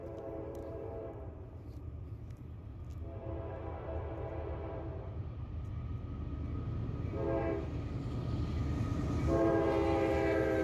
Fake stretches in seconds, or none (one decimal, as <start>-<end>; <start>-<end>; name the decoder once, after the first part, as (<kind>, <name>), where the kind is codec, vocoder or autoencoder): 0.0-2.8 (vocoder, BigVGAN v2); 4.9-5.7

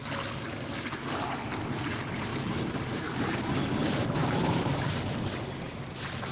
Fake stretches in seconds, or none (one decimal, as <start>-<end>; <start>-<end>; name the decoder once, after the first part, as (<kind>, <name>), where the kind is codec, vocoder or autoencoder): 2.3-5.4 (vocoder, BigVGAN v2)

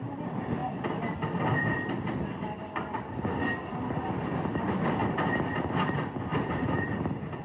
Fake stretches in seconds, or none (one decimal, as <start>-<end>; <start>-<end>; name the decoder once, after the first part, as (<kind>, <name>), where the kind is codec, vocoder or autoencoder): 0.0-0.6 (vocoder, BigVGAN v2); 3.7-7.4

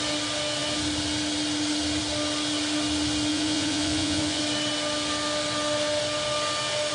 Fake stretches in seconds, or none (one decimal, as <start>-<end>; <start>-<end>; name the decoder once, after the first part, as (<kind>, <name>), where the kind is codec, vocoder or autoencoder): 3.3-4.4 (vocoder, Vocos)

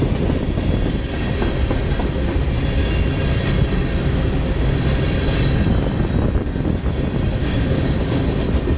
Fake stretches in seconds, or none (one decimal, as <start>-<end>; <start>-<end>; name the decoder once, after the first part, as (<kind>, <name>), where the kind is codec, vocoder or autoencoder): 7.4-8.4 (codec, DAC)